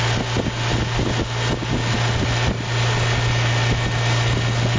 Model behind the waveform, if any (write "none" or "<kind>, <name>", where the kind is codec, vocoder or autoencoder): none